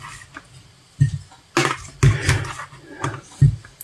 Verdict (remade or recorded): recorded